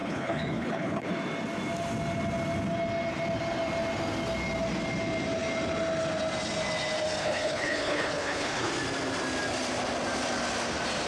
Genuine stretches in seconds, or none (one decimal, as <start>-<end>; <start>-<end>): 1.1-7.2; 8.7-11.1